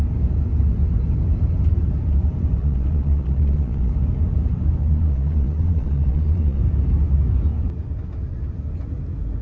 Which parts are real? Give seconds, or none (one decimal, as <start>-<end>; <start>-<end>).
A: 0.0-2.6; 3.9-4.8; 6.6-9.4